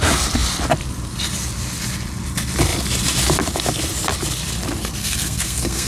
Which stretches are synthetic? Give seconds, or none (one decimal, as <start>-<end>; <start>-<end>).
5.0-5.9